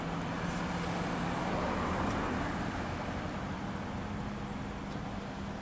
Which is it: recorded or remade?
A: recorded